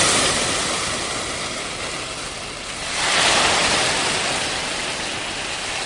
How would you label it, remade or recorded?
recorded